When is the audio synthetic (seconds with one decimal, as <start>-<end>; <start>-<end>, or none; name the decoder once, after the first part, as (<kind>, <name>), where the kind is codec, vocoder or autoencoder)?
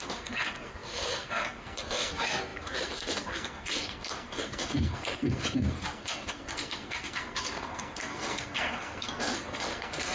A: 0.0-10.1 (codec, SNAC)